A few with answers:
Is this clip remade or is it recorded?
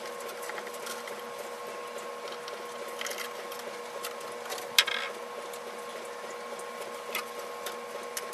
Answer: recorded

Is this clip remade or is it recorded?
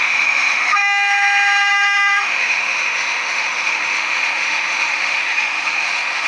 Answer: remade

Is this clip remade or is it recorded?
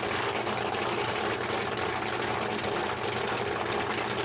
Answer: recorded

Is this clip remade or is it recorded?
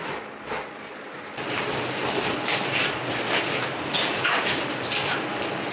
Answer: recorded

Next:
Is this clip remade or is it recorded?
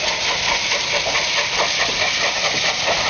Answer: recorded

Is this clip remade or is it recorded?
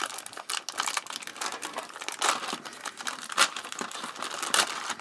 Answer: recorded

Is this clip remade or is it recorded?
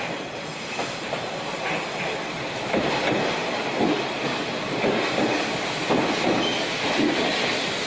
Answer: recorded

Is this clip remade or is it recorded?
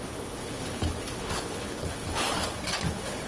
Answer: remade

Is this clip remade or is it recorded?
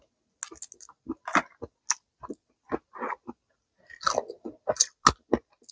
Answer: recorded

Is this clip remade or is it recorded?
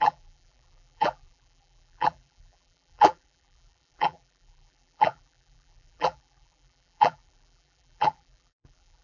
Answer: remade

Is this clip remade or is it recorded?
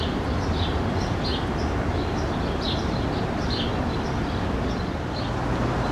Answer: recorded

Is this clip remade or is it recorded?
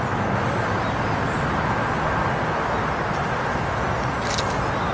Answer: recorded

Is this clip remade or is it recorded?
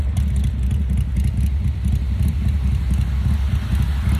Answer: recorded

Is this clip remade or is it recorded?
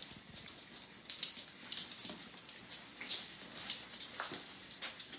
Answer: recorded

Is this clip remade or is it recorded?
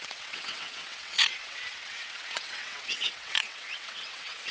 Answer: remade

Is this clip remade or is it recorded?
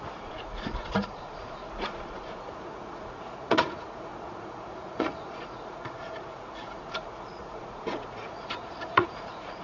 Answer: remade